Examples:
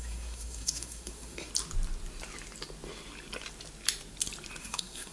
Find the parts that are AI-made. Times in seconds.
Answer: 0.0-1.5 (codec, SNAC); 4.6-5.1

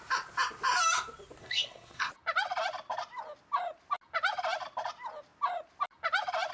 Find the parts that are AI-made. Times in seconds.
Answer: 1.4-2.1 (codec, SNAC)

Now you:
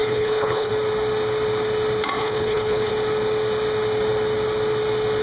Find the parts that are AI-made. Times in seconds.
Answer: 0.0-0.7 (codec, HILCodec); 2.2-2.9

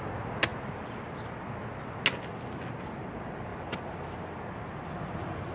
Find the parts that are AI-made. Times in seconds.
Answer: none

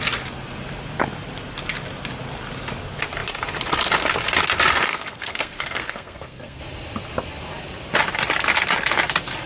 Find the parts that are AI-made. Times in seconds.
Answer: 4.9-6.6 (codec, SNAC)

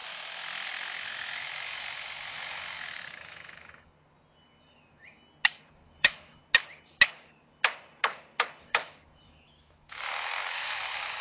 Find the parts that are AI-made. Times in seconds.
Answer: 1.0-3.9 (autoencoder, DAC-VAE); 5.7-6.4; 8.6-11.2

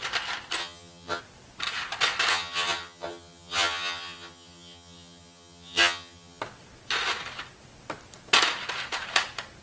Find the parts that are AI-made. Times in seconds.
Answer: 0.6-1.2 (vocoder, HiFi-GAN); 2.3-6.4

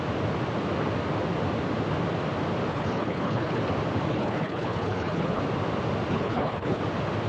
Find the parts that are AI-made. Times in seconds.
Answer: 2.7-3.6 (codec, HILCodec); 4.1-5.4; 6.1-6.8